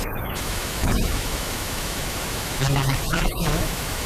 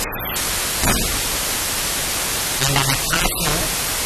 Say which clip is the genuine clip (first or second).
second